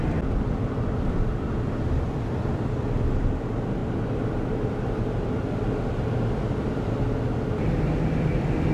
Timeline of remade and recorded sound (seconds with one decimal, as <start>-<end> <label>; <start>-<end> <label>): 0.0-8.7 recorded